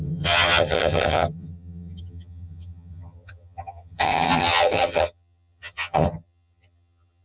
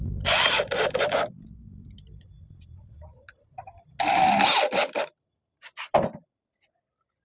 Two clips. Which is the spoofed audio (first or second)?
first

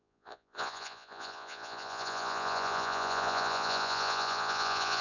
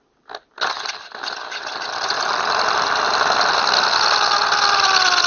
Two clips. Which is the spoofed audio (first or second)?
first